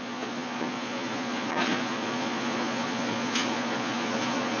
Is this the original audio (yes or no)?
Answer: no